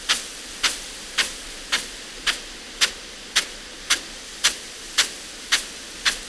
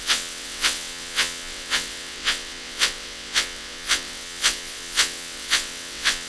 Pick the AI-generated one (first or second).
second